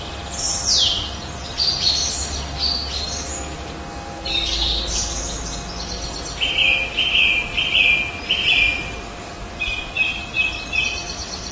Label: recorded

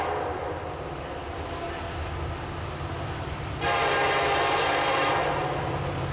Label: recorded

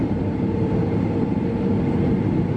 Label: remade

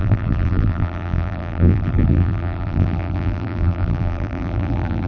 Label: remade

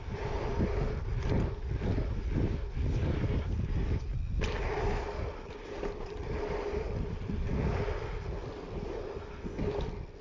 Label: recorded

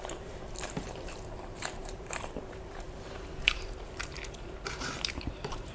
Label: remade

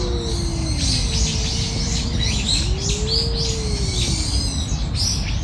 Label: recorded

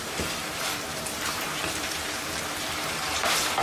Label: remade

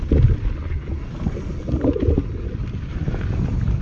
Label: recorded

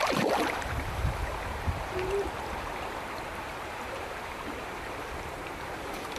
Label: remade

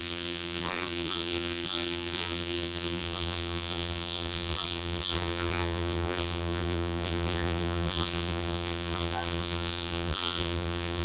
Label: remade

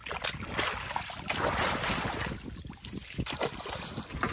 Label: recorded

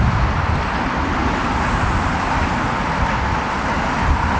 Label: recorded